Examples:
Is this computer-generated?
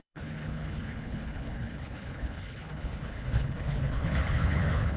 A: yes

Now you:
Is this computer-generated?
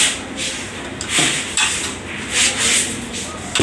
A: no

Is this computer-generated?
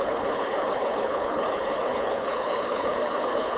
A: yes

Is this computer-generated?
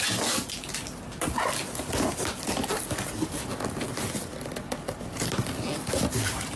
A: no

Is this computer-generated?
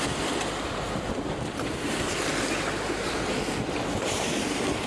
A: no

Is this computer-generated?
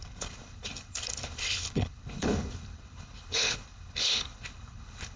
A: yes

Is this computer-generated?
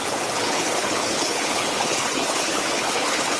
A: yes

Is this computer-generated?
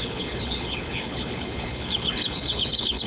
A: yes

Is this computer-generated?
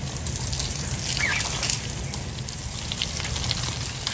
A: no